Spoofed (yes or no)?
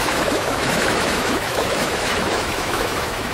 yes